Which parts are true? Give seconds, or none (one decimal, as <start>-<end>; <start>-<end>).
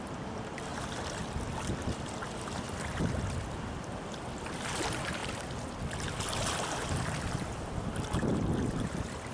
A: 5.2-6.5